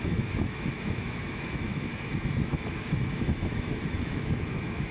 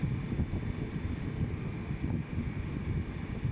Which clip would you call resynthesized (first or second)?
first